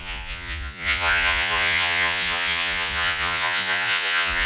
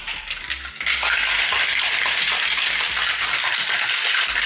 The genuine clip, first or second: second